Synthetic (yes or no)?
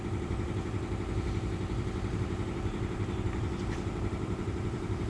yes